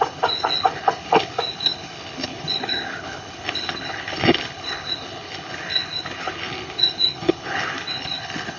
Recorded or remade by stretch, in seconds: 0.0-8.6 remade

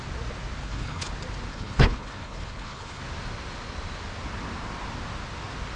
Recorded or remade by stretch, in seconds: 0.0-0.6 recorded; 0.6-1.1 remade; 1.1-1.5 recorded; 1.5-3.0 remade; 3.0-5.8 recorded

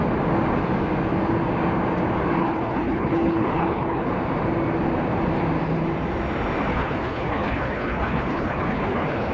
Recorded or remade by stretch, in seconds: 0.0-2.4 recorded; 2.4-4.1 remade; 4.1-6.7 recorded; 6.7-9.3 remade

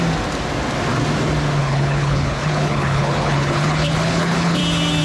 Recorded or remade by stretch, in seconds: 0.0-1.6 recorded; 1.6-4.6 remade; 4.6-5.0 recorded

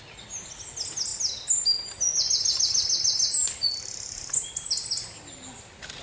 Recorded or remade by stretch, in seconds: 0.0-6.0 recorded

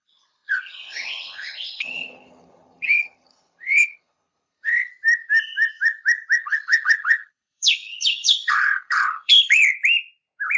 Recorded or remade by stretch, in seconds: 0.0-4.9 remade; 4.9-6.4 recorded; 6.4-9.6 remade; 9.6-10.6 recorded